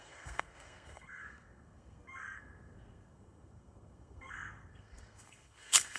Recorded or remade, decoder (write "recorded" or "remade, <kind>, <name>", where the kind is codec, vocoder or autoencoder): remade, codec, SNAC